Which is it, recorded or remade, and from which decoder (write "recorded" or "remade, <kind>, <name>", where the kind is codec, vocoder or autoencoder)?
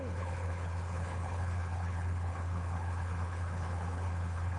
remade, codec, HILCodec